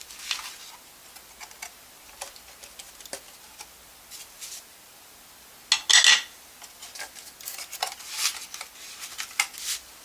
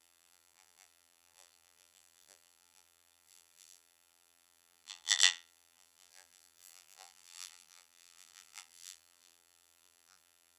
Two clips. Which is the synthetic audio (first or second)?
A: second